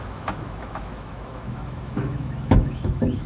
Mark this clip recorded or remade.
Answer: remade